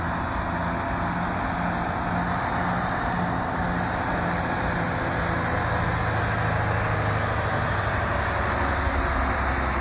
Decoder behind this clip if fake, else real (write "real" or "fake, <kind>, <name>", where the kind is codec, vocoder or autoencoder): real